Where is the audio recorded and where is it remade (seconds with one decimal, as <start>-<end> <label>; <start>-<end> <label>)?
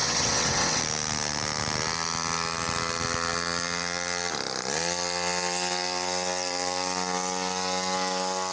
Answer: 0.0-0.8 remade; 0.8-8.5 recorded